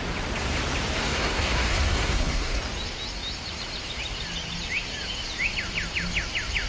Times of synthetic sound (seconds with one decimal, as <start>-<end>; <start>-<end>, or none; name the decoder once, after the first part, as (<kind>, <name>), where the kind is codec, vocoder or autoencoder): 1.0-2.6 (codec, SNAC)